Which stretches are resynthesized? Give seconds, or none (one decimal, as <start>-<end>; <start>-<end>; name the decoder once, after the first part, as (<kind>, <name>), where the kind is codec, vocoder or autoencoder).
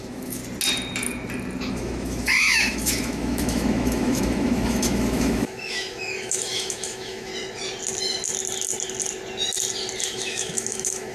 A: 0.0-0.4 (autoencoder, DAC-VAE); 1.7-7.3; 10.0-11.1